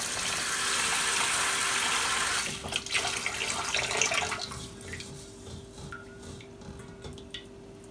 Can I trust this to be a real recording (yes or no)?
yes